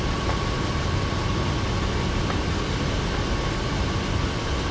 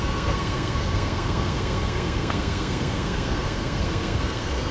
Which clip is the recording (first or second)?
first